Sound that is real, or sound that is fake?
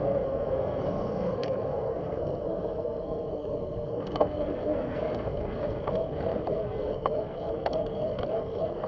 fake